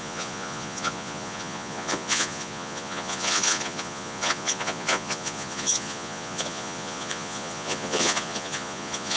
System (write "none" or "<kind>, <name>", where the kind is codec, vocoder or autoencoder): vocoder, Vocos